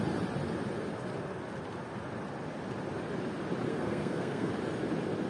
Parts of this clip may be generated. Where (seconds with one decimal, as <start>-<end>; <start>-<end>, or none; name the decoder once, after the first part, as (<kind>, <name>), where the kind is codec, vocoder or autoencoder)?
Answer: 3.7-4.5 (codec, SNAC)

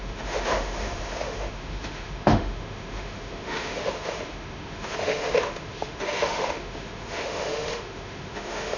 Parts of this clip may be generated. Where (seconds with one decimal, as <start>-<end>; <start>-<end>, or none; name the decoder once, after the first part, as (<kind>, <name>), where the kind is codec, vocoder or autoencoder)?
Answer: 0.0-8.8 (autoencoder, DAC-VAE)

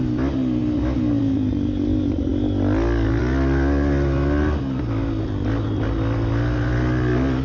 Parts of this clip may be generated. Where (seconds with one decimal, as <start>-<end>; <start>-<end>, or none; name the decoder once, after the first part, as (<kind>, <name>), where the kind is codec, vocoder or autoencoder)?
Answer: none

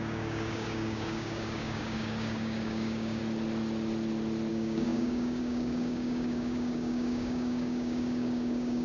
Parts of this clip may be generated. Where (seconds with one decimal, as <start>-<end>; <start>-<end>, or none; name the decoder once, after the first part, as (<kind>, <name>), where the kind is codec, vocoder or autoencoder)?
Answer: 0.0-3.2 (codec, DAC); 4.5-8.8

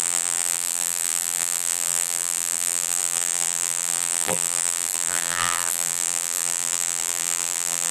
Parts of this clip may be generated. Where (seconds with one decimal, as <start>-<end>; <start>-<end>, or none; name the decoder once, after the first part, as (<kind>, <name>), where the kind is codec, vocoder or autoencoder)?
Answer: 0.0-7.9 (vocoder, BigVGAN v2)

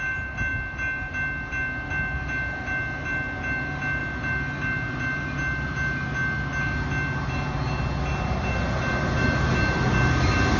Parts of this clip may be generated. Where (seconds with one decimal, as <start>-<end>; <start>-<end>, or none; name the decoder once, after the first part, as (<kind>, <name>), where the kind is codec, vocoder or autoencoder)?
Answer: none